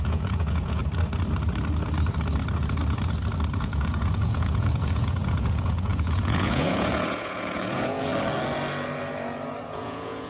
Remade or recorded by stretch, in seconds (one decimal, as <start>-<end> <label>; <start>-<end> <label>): 0.0-0.8 remade; 0.8-3.6 recorded; 3.6-8.1 remade; 8.1-9.6 recorded; 9.6-10.3 remade